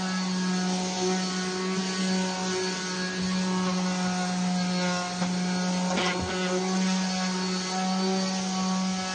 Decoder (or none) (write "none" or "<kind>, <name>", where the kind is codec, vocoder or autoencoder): none